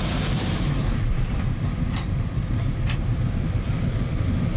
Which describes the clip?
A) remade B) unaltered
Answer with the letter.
A